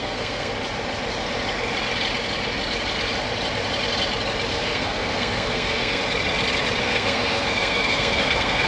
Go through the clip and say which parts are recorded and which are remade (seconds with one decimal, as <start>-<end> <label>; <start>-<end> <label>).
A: 0.0-0.5 remade; 0.5-4.5 recorded; 4.5-6.0 remade; 6.0-6.8 recorded; 6.8-8.7 remade